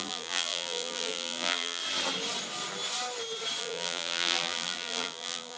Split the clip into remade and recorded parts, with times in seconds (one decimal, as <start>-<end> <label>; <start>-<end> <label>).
0.0-1.8 remade; 1.8-3.6 recorded; 3.6-5.6 remade